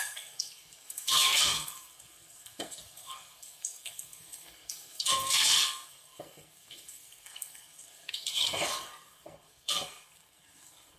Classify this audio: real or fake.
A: fake